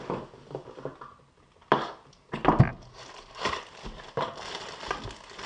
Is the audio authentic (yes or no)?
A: yes